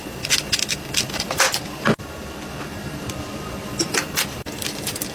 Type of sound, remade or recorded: remade